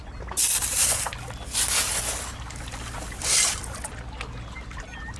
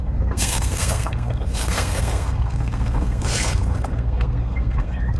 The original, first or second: first